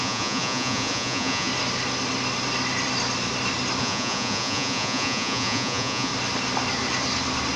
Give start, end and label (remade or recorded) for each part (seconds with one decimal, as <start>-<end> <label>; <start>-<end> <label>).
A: 0.0-1.5 remade; 1.5-3.8 recorded; 3.8-6.1 remade; 6.1-7.6 recorded